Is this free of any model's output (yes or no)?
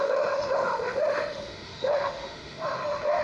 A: no